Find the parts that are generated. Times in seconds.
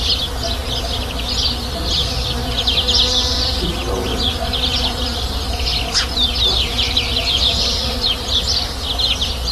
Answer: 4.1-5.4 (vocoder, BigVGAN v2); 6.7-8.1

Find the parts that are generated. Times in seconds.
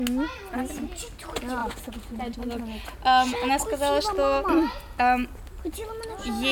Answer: 1.6-2.2 (vocoder, Vocos)